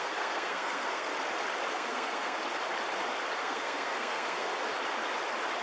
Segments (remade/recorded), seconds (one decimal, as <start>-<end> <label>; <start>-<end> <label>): 0.0-1.1 remade; 1.1-1.7 recorded; 1.7-2.4 remade; 2.4-3.4 recorded; 3.4-4.5 remade; 4.5-5.6 recorded